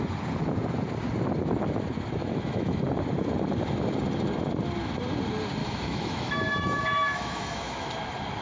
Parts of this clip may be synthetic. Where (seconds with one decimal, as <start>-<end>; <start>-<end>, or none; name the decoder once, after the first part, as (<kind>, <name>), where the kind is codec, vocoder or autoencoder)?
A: 2.2-2.8 (autoencoder, DAC-VAE); 5.6-7.9